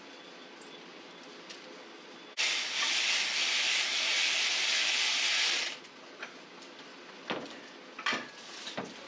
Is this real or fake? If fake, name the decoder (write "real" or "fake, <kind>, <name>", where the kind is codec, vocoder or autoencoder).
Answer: real